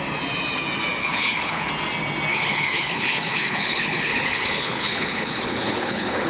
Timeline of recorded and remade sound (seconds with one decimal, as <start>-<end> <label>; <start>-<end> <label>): 0.0-1.0 recorded; 1.0-1.7 remade; 1.7-2.3 recorded; 2.3-6.3 remade